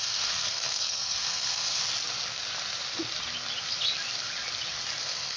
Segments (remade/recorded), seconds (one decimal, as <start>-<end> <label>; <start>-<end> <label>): 0.0-1.8 remade; 1.8-5.0 recorded; 5.0-5.4 remade